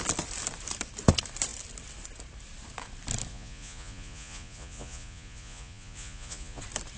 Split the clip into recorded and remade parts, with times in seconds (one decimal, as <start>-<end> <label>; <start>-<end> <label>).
0.0-3.3 recorded; 3.3-6.6 remade; 6.6-7.0 recorded